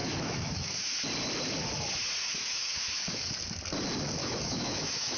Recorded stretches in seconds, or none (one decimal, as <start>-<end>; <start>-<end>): 1.1-2.2; 3.3-4.2